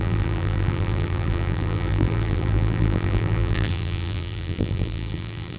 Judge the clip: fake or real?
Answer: fake